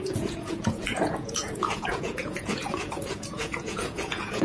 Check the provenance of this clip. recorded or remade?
remade